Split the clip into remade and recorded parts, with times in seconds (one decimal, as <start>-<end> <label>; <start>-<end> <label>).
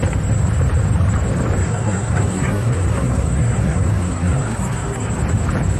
0.0-1.6 recorded; 1.6-5.1 remade; 5.1-5.8 recorded